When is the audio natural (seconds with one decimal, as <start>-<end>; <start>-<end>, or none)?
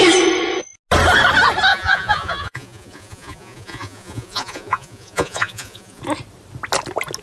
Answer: 0.0-1.7; 6.0-7.2